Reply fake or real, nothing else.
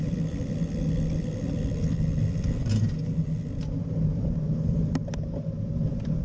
real